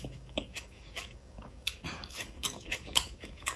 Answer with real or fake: fake